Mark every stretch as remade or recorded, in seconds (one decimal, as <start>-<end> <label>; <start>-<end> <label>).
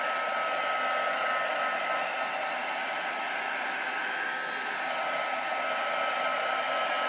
0.0-2.6 recorded; 2.6-4.0 remade; 4.0-6.3 recorded; 6.3-7.1 remade